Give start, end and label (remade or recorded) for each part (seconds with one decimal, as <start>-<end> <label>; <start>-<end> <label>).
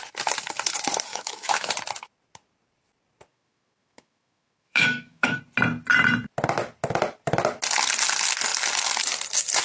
0.0-1.1 recorded; 1.1-1.7 remade; 1.7-3.3 recorded; 3.3-5.4 remade; 5.4-9.6 recorded